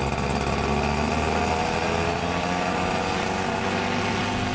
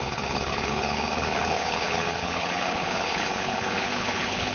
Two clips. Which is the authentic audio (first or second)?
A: first